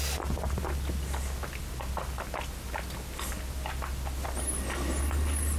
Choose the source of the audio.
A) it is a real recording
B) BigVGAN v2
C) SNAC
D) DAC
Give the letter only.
A